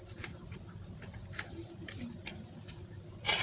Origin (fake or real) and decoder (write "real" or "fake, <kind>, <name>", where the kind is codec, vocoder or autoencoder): fake, vocoder, BigVGAN v2